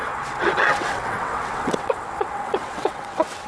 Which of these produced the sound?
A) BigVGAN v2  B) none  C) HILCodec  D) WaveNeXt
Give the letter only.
D